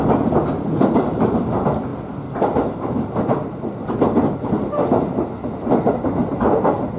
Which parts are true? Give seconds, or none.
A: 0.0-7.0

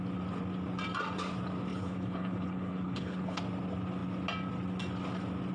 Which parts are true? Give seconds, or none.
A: 0.0-1.7; 3.4-5.5

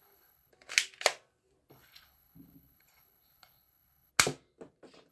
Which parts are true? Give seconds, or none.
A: 0.5-1.7; 4.1-5.1

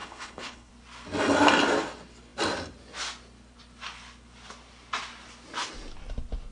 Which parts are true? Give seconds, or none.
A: 0.7-6.5

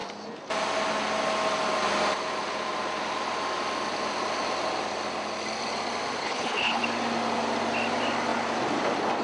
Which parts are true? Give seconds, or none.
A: 0.0-6.2; 6.8-9.2

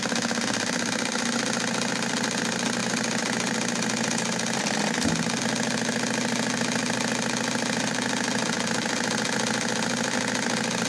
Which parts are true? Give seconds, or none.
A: 0.0-10.9

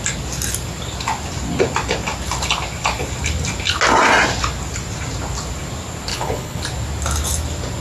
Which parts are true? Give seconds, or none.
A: 0.0-6.1; 6.6-7.8

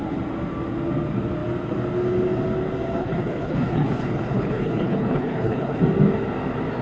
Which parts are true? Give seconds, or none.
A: 0.0-3.0; 5.8-6.8